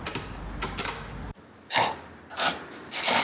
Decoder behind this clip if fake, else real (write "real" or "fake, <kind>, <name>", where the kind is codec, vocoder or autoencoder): real